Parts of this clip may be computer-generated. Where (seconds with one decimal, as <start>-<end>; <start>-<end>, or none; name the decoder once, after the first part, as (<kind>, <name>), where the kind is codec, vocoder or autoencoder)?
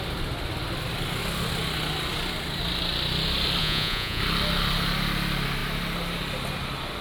3.6-4.2 (vocoder, Vocos)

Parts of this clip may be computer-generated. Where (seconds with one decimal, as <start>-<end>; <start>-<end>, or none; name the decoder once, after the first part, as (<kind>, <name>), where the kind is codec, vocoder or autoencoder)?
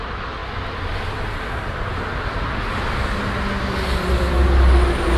none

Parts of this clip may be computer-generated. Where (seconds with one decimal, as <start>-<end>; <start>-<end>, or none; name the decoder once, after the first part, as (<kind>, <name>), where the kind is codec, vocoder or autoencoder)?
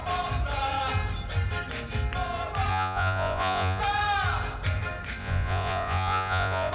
2.7-3.8 (vocoder, Vocos); 5.2-6.7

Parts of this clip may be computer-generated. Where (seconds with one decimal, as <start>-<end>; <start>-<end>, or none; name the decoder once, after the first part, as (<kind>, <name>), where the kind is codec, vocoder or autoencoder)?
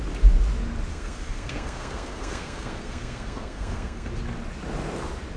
0.9-4.1 (codec, SNAC)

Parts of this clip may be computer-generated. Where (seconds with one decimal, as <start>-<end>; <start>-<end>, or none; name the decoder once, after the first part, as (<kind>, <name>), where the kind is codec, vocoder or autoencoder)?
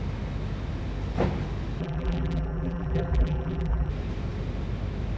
1.8-3.9 (vocoder, BigVGAN v2)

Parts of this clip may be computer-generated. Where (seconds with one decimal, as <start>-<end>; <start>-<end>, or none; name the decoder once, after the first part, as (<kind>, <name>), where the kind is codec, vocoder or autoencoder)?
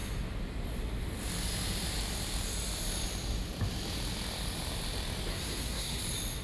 5.3-6.0 (codec, SNAC)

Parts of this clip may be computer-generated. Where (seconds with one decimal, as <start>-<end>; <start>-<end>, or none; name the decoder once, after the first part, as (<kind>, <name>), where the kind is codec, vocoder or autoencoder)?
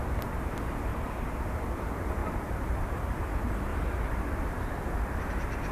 0.9-1.4 (vocoder, BigVGAN v2); 2.2-3.3